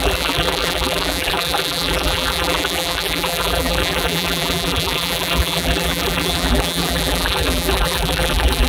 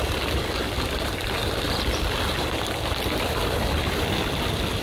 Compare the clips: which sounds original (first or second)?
second